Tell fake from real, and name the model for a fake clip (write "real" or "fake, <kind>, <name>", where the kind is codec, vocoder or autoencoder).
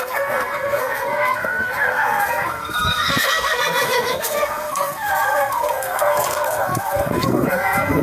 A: fake, codec, SNAC